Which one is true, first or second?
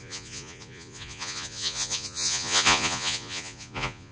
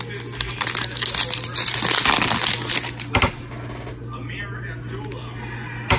second